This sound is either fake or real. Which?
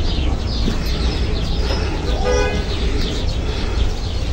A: real